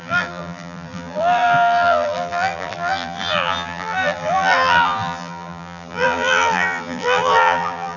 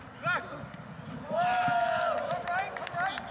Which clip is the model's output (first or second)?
first